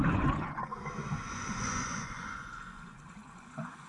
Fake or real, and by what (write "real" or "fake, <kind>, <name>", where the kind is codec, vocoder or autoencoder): fake, vocoder, Vocos